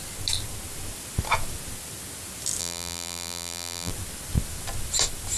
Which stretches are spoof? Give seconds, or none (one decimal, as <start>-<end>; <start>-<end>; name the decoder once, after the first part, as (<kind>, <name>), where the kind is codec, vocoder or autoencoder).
2.6-3.9 (vocoder, BigVGAN v2)